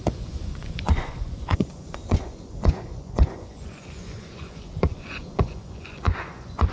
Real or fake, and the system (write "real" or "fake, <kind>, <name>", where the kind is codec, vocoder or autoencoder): fake, vocoder, Vocos